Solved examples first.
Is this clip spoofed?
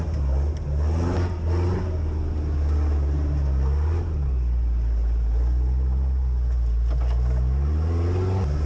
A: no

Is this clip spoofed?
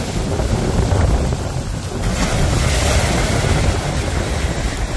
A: no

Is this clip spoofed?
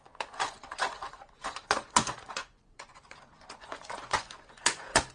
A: yes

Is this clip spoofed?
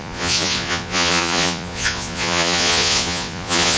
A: yes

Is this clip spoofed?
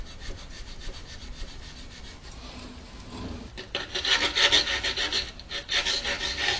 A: no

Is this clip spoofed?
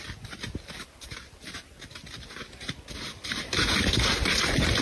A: no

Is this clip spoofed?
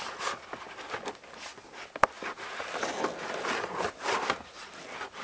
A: no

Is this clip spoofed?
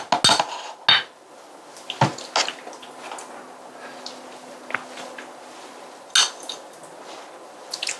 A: no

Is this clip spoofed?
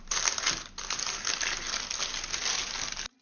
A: no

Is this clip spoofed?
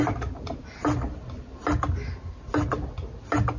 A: no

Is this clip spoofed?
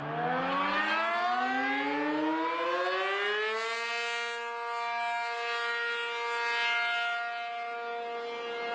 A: no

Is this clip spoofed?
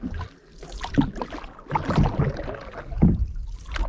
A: no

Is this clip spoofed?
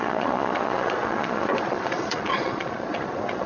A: yes